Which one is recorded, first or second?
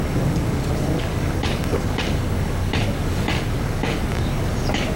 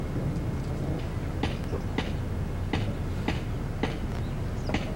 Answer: second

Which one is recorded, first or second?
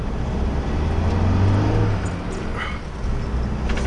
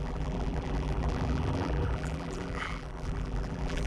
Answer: first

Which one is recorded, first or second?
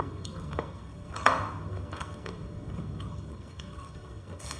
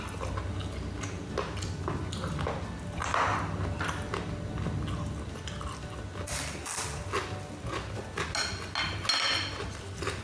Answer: second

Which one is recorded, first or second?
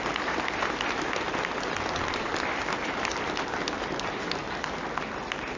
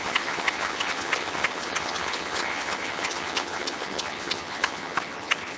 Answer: first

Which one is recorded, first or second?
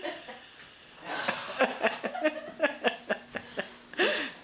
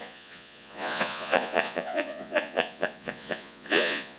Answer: first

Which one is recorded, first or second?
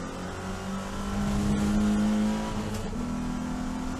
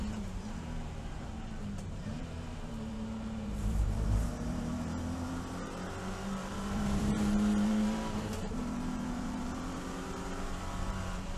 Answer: first